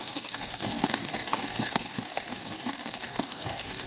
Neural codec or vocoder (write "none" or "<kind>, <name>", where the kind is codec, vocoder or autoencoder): codec, DAC